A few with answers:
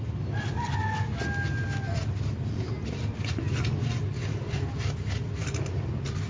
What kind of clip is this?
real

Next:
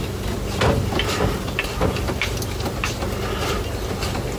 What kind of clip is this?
real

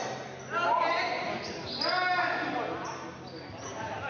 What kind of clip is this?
real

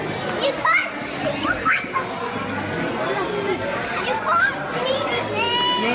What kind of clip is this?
real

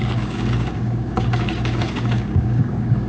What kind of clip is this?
fake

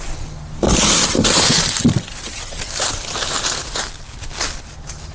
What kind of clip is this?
real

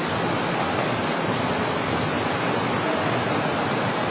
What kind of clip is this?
real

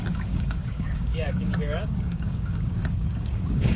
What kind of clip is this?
fake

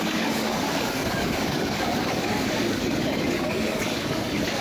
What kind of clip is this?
fake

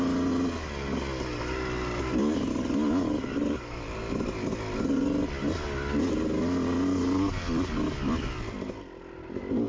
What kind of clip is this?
real